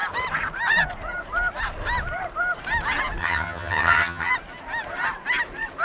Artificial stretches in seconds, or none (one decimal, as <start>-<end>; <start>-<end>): 3.2-4.3